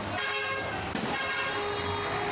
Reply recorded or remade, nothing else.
recorded